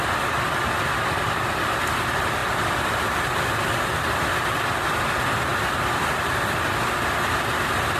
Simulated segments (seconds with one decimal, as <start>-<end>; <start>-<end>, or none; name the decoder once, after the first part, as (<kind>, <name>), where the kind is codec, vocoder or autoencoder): none

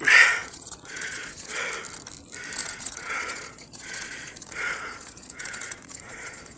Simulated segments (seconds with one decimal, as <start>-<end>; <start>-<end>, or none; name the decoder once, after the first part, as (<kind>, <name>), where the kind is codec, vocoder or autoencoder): 0.4-1.6 (vocoder, Vocos); 2.6-6.6

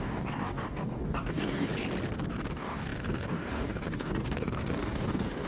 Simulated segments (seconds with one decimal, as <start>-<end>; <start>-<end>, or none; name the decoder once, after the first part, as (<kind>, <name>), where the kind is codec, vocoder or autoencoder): 0.0-1.7 (codec, DAC); 2.5-5.5

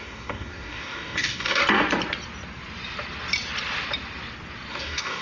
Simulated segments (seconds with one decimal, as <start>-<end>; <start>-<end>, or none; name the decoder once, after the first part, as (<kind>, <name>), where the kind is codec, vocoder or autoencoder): 0.0-1.6 (codec, DAC); 4.7-5.2

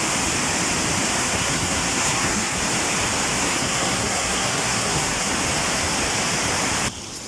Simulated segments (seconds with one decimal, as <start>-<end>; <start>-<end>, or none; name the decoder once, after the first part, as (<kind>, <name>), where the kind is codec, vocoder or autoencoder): 1.2-2.6 (codec, SNAC); 3.4-5.3

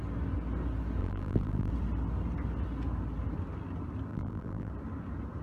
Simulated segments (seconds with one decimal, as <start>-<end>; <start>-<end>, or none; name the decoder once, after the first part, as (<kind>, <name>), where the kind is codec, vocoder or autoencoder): 1.0-1.7 (vocoder, BigVGAN v2); 4.1-4.7

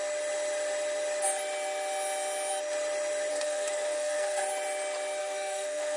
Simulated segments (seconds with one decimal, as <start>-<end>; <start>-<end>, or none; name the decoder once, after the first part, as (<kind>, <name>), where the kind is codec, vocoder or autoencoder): 3.3-4.4 (codec, SNAC); 5.2-6.0